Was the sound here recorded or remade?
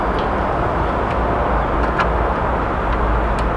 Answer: recorded